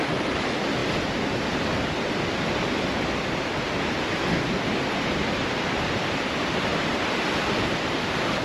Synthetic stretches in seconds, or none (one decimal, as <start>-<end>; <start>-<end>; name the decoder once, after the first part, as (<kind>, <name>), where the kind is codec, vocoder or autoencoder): 0.0-0.8 (vocoder, BigVGAN v2); 4.4-8.4